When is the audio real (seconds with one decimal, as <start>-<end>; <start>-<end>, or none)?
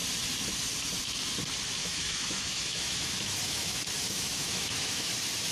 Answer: 0.0-1.8; 5.1-5.5